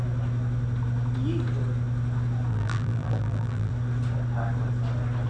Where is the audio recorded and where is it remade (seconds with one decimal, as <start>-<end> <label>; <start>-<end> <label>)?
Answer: 0.0-2.5 recorded; 2.5-3.7 remade; 3.7-5.3 recorded